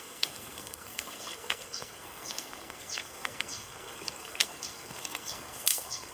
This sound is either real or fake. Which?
fake